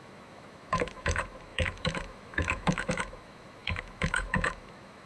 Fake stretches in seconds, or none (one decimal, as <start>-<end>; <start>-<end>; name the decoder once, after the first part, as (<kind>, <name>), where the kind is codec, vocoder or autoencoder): 0.0-5.1 (autoencoder, DAC-VAE)